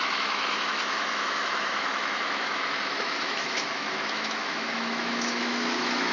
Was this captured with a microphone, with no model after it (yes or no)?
no